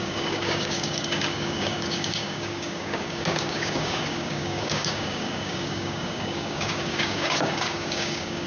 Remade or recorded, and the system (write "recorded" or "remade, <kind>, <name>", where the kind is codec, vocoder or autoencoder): remade, codec, DAC